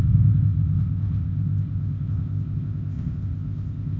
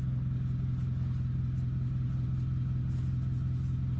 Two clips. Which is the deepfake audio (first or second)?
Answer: first